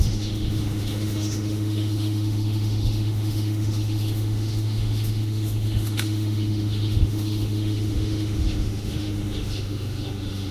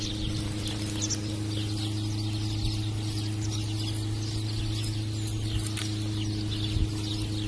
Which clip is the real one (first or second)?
second